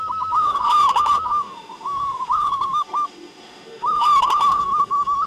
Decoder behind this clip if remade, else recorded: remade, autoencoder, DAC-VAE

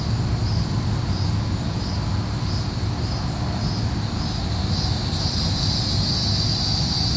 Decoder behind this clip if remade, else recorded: recorded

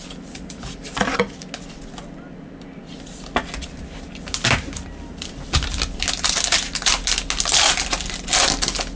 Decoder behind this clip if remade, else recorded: recorded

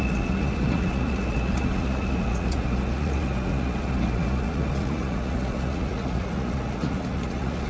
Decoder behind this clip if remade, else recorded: remade, vocoder, Vocos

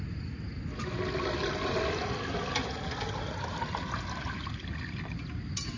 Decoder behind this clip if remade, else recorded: recorded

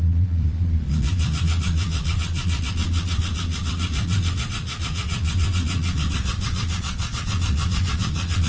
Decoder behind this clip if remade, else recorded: remade, vocoder, Vocos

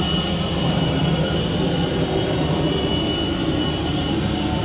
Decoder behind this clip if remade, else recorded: recorded